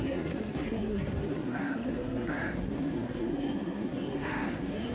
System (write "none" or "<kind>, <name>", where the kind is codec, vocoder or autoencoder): codec, SNAC